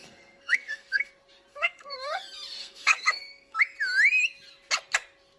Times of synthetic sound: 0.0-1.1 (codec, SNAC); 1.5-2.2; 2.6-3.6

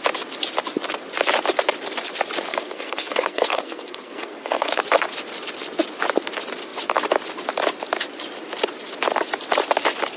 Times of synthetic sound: 2.5-4.8 (codec, SNAC)

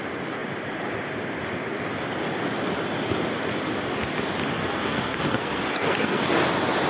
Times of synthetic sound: 4.6-6.3 (codec, SNAC)